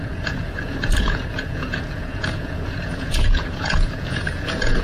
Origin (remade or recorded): remade